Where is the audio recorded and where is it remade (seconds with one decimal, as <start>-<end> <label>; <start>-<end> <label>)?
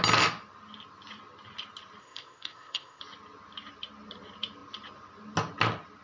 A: 0.0-2.0 recorded; 2.0-3.0 remade; 3.0-6.0 recorded